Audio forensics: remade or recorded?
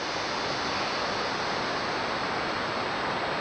recorded